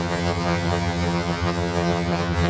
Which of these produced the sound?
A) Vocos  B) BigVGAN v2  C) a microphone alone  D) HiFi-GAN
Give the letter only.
D